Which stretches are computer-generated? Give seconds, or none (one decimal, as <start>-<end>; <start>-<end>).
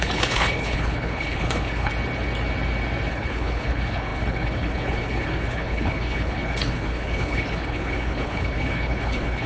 0.0-1.9; 3.1-9.5